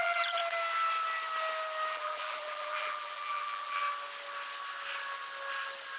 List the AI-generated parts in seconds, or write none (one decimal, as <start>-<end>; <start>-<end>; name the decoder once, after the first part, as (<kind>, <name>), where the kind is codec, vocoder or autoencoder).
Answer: 0.0-0.4 (vocoder, BigVGAN v2); 1.9-3.8